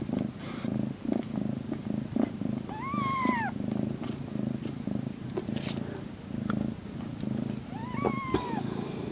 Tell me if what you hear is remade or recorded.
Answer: recorded